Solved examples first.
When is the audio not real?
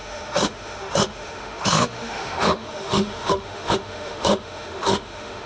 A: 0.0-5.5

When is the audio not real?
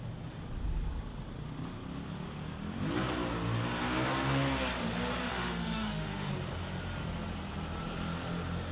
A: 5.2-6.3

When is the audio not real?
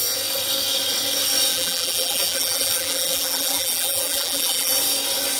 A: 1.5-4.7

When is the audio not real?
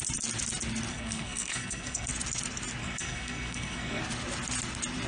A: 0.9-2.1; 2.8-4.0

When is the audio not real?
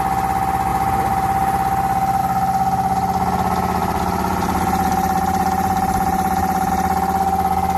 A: 0.7-2.2; 3.8-6.7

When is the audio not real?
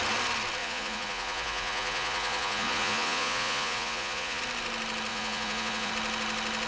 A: 0.6-4.4; 5.1-5.9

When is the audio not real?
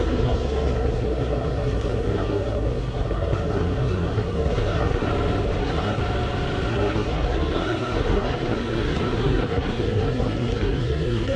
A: 0.0-5.1; 5.6-6.0; 6.7-11.4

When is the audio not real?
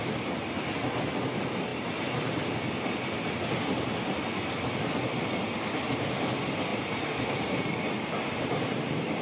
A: 6.7-7.6